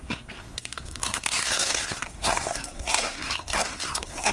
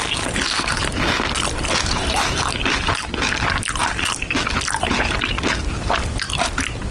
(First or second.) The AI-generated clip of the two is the first